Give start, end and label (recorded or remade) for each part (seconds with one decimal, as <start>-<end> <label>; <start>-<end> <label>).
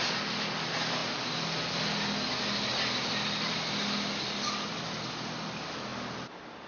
0.0-6.7 recorded